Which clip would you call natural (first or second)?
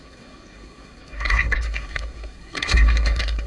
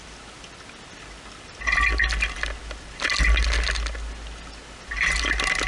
second